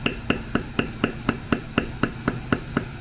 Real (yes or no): yes